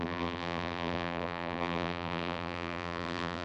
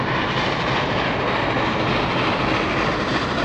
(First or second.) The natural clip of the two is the second